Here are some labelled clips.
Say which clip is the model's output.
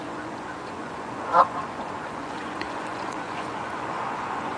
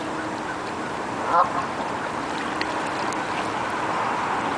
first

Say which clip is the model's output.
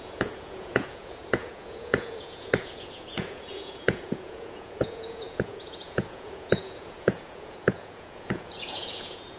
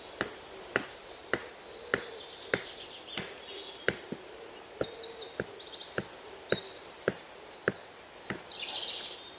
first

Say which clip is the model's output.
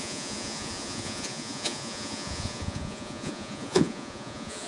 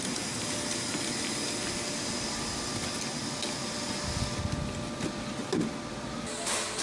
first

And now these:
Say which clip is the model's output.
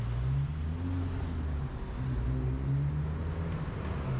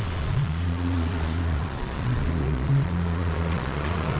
second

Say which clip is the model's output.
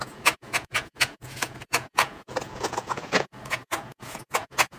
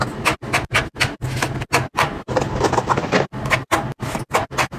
first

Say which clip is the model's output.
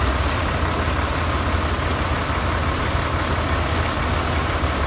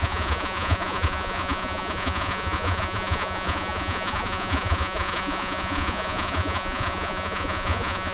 second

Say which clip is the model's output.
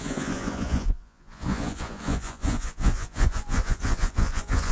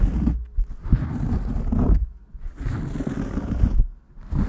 first